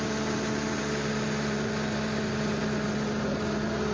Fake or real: real